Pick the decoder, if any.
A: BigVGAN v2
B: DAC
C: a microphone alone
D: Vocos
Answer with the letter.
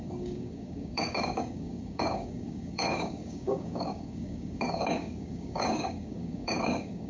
B